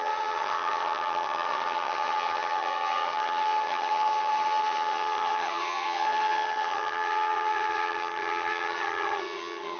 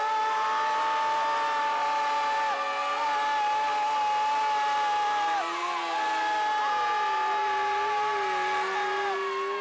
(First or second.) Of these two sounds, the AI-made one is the first